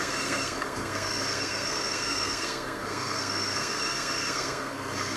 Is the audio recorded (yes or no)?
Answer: no